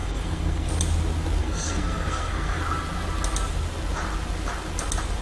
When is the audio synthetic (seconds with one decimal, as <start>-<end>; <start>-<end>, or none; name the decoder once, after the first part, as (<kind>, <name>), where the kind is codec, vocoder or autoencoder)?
0.0-0.7 (codec, SNAC); 1.4-2.6